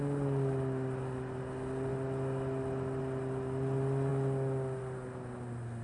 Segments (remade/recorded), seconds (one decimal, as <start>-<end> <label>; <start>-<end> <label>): 0.0-5.8 recorded